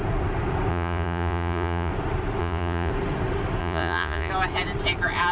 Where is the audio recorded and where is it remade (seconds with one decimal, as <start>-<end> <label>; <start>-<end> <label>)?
0.0-0.7 recorded; 0.7-1.9 remade; 1.9-2.4 recorded; 2.4-2.9 remade; 2.9-3.6 recorded; 3.6-4.3 remade; 4.3-5.3 recorded